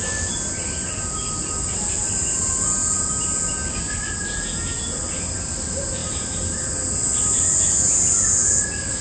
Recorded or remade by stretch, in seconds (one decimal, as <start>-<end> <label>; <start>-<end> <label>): 0.0-9.0 recorded